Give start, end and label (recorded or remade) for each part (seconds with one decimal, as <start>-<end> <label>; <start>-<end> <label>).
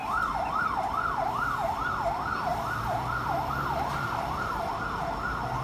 0.0-0.8 remade; 0.8-2.5 recorded; 2.5-4.7 remade; 4.7-5.6 recorded